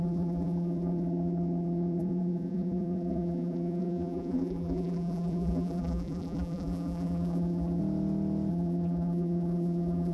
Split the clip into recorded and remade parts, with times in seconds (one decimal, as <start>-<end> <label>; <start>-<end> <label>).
0.0-7.8 remade; 7.8-8.5 recorded; 8.5-10.1 remade